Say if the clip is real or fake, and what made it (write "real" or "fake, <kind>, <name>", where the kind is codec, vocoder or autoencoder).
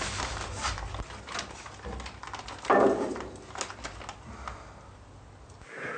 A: real